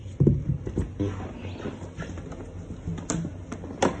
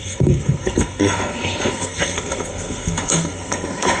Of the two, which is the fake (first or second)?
second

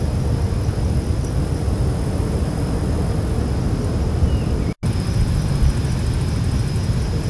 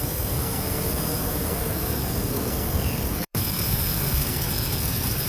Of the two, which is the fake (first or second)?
second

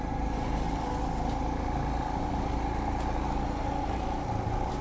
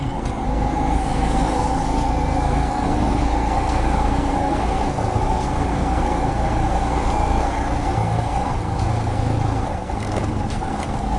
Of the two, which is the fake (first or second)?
second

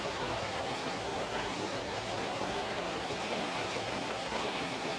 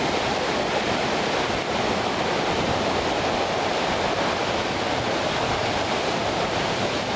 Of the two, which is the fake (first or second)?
first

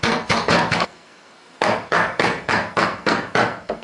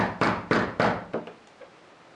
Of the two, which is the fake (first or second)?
first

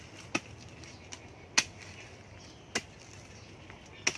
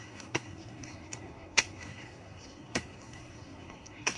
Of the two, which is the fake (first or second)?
second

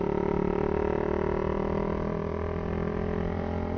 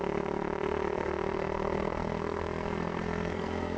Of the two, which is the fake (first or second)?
second